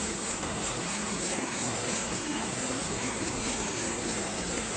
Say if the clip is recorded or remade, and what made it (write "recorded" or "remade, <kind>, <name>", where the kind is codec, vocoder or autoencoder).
remade, codec, SNAC